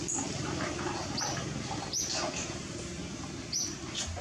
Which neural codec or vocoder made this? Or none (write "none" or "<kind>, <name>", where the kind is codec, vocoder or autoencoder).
none